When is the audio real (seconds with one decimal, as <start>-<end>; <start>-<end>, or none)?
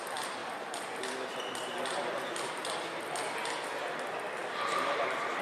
0.0-4.4